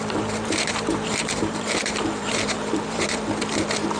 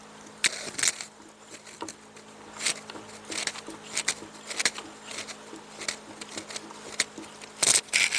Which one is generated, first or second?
first